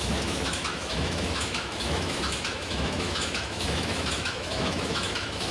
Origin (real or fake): fake